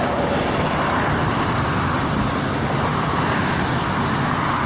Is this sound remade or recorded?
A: recorded